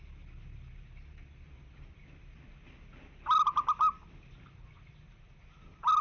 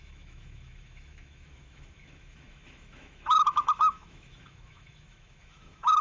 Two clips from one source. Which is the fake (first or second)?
second